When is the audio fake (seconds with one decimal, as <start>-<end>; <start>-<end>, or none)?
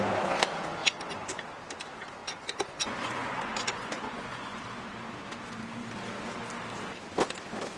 0.8-1.4; 2.2-4.6